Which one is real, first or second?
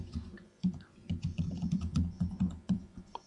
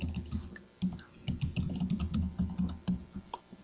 second